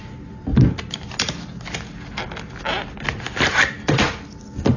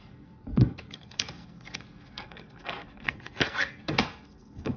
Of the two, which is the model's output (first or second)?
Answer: second